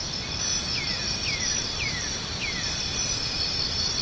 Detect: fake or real real